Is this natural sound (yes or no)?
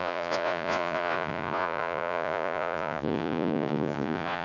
no